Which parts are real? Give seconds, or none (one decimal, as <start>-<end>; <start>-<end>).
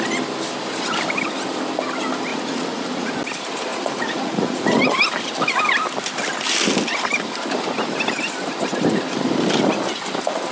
0.0-2.3; 3.1-3.7; 4.6-10.5